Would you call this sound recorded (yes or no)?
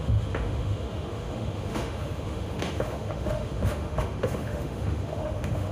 no